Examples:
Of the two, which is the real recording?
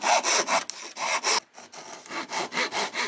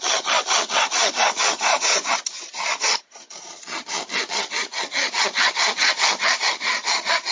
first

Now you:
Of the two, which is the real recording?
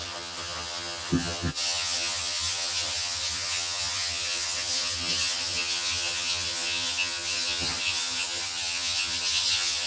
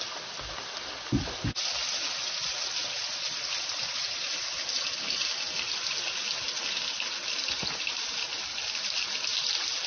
second